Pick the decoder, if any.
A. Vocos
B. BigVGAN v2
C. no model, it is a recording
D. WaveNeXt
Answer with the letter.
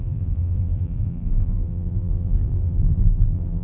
B